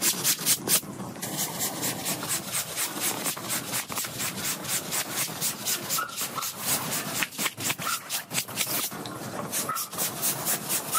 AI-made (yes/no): yes